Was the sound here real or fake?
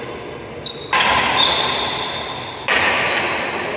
real